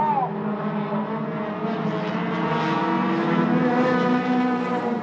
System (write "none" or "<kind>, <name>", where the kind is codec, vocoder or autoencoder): none